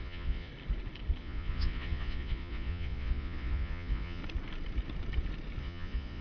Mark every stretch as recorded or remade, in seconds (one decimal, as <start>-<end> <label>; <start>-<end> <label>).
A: 0.0-0.5 remade; 0.5-1.2 recorded; 1.2-4.2 remade; 4.2-5.6 recorded; 5.6-6.2 remade